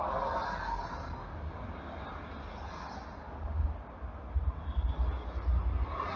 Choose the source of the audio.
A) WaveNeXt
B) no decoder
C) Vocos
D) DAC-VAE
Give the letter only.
B